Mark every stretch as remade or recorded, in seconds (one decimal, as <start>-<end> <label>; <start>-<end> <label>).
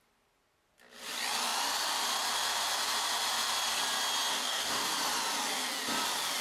0.0-4.3 recorded; 4.3-4.9 remade; 4.9-6.4 recorded